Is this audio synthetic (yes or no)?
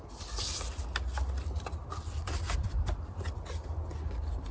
no